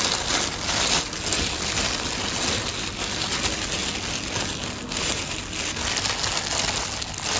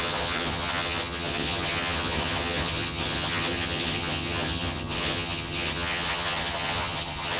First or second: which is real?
first